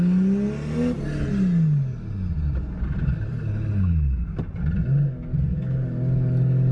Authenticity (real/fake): real